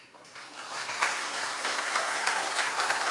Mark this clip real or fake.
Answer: fake